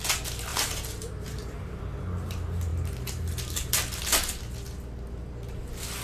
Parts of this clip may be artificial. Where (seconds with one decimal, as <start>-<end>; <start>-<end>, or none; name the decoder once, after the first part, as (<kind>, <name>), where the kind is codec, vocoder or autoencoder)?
0.5-1.8 (vocoder, BigVGAN v2)